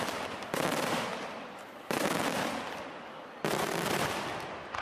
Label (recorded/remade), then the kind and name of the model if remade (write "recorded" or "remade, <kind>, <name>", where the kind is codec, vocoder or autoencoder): remade, vocoder, BigVGAN v2